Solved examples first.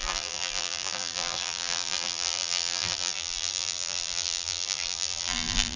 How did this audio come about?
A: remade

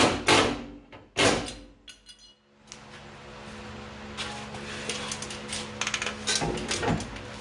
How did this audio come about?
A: recorded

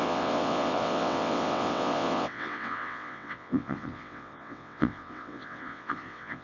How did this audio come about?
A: remade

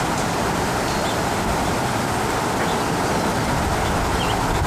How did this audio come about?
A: remade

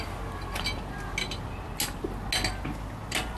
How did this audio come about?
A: recorded